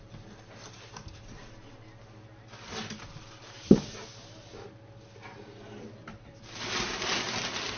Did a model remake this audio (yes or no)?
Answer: no